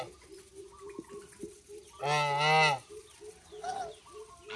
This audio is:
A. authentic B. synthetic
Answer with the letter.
A